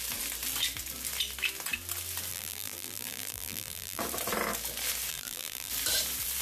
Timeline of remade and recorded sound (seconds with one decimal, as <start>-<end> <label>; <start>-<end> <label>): 0.0-2.3 recorded; 2.3-4.0 remade; 4.0-5.1 recorded; 5.1-5.7 remade; 5.7-6.4 recorded

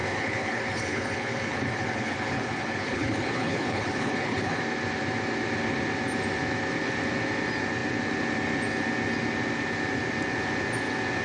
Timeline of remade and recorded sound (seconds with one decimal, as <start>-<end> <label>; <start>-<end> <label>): 0.0-4.6 remade; 4.6-11.2 recorded

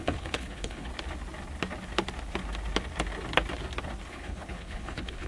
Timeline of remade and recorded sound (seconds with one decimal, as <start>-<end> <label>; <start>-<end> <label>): 0.0-0.9 remade; 0.9-4.1 recorded; 4.1-5.3 remade

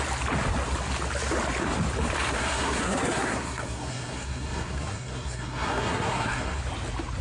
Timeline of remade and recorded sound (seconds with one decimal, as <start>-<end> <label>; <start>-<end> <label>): 0.0-2.3 recorded; 2.3-6.6 remade; 6.6-7.2 recorded

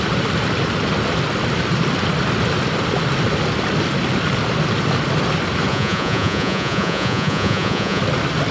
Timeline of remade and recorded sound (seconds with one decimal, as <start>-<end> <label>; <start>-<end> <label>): 0.0-5.7 recorded; 5.7-8.0 remade; 8.0-8.5 recorded

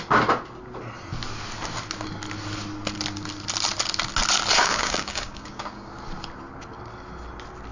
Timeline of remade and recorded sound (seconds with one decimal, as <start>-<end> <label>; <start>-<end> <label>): 0.0-4.6 recorded; 4.6-5.9 remade; 5.9-7.7 recorded

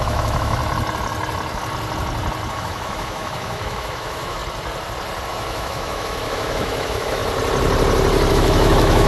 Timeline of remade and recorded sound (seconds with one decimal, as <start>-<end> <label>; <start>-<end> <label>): 0.0-0.6 remade; 0.6-2.5 recorded; 2.5-4.4 remade; 4.4-5.3 recorded; 5.3-7.2 remade; 7.2-8.3 recorded; 8.3-9.1 remade